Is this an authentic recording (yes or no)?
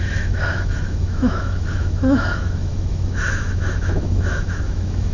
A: no